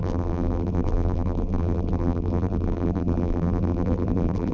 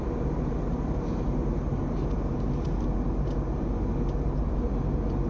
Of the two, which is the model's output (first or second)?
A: first